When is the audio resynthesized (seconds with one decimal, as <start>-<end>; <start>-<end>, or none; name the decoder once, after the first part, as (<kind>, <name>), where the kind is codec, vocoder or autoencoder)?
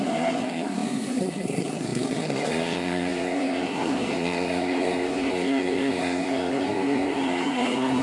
0.0-8.0 (codec, SNAC)